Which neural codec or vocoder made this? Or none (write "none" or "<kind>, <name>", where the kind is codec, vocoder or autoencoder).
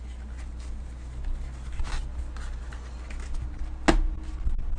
none